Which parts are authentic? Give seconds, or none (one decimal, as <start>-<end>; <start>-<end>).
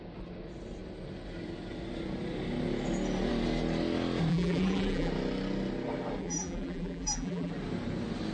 0.0-4.3; 5.1-6.2; 7.5-8.3